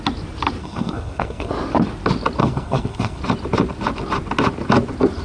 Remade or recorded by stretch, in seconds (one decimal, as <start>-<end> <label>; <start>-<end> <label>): 0.0-0.6 recorded; 0.6-1.5 remade; 1.5-2.4 recorded; 2.4-3.2 remade; 3.2-5.2 recorded